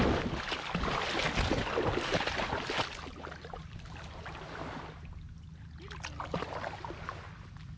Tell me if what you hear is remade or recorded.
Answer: recorded